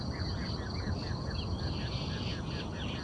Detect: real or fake real